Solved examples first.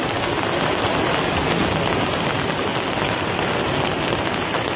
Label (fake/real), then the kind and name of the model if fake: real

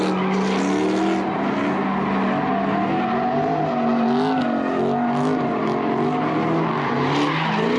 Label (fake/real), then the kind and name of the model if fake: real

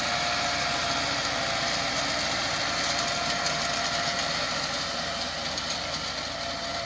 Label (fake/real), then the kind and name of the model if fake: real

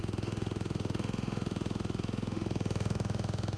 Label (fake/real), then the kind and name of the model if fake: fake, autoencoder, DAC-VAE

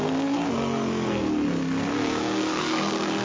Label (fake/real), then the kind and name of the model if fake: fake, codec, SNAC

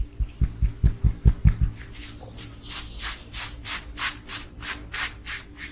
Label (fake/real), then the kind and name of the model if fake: real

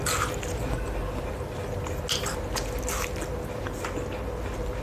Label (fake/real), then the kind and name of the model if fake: real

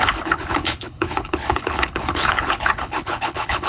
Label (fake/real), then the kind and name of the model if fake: fake, codec, HILCodec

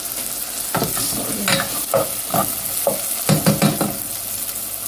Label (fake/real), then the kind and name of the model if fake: real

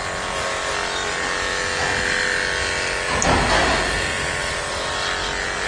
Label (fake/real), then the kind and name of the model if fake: real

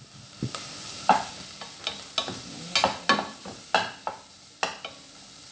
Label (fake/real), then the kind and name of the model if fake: real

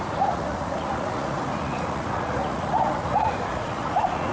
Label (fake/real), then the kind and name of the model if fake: fake, vocoder, Vocos